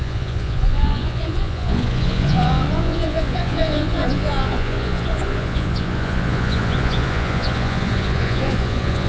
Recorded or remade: remade